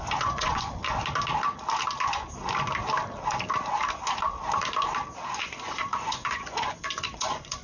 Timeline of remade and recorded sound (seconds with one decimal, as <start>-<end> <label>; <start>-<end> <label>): 0.0-0.8 remade; 0.8-5.4 recorded; 5.4-7.6 remade